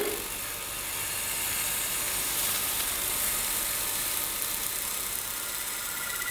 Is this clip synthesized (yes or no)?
no